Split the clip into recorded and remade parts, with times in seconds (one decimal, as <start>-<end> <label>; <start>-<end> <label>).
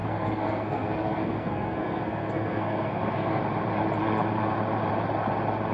0.0-3.4 remade; 3.4-5.7 recorded